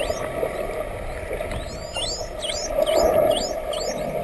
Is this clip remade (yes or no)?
no